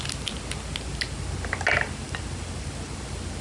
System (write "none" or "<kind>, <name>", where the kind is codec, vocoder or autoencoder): none